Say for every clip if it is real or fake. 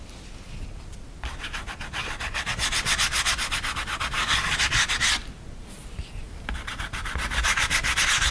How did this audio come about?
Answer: real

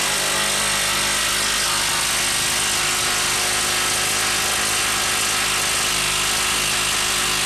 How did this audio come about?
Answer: real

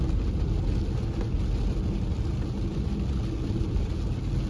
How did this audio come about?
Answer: real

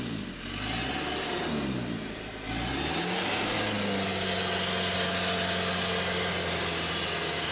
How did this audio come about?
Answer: real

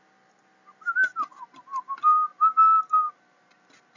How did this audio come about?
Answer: real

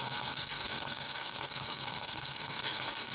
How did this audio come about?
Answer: fake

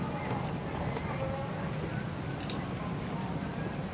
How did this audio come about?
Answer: real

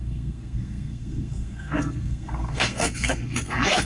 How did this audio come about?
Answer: fake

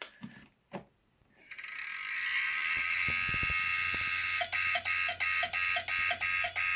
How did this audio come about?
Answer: real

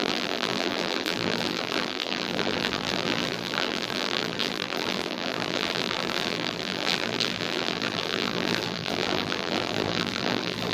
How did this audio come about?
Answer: fake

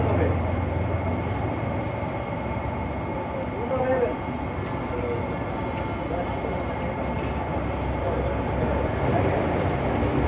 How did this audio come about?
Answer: real